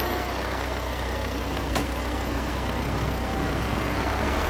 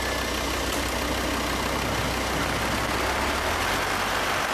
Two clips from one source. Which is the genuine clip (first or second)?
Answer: second